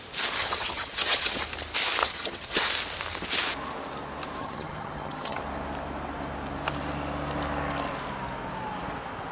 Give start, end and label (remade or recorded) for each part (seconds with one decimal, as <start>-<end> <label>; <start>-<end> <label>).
0.0-0.4 recorded; 0.4-1.4 remade; 1.4-2.0 recorded; 2.0-2.7 remade; 2.7-4.4 recorded; 4.4-5.4 remade; 5.4-9.3 recorded